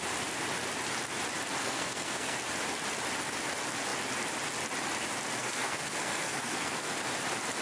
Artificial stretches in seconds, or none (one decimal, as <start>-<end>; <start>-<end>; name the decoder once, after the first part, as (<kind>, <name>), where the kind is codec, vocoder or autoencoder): 1.6-2.4 (codec, SNAC); 5.4-6.9